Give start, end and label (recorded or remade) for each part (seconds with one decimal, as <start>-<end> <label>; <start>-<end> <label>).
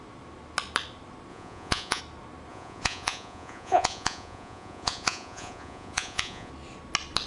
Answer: 0.0-1.3 recorded; 1.3-2.0 remade; 2.0-2.5 recorded; 2.5-6.5 remade; 6.5-7.3 recorded